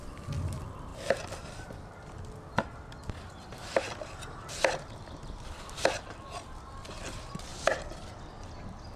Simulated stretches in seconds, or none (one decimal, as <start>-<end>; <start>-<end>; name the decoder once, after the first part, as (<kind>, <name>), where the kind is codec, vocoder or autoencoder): none